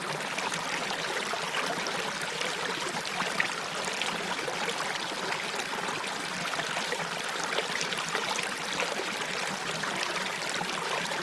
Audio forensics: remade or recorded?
recorded